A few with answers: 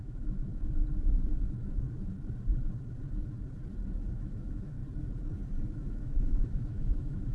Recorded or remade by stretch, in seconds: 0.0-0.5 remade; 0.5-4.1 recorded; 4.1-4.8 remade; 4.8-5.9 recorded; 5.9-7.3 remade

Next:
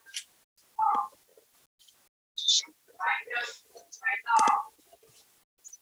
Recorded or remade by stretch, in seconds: 0.0-5.8 recorded

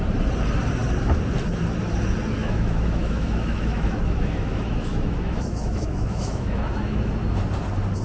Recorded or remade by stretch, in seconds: 0.0-2.4 recorded; 2.4-7.1 remade; 7.1-8.0 recorded